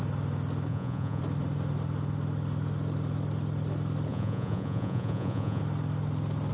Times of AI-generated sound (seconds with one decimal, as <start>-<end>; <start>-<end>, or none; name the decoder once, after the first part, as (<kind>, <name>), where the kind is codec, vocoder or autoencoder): 0.7-1.2 (vocoder, Vocos); 4.1-5.6